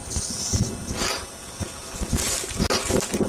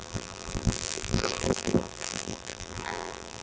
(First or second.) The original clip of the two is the first